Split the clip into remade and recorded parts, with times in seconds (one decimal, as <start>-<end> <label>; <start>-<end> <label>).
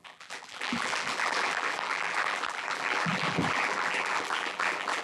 0.0-5.0 remade